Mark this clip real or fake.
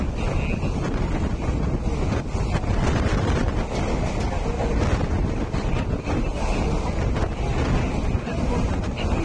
real